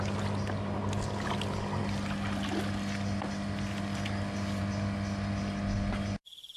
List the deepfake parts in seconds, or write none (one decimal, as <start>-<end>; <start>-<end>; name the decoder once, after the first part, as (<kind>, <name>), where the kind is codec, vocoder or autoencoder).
none

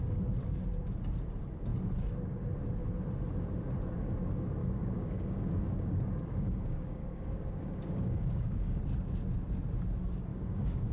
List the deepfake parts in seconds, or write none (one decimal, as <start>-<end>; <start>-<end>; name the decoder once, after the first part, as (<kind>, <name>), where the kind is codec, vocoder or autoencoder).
4.6-8.8 (codec, DAC); 10.3-10.9